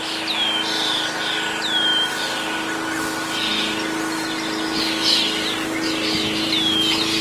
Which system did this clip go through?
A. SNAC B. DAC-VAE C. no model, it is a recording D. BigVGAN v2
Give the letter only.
C